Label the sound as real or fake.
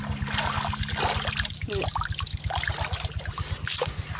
real